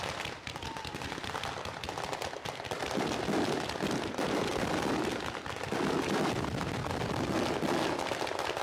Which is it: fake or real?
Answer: real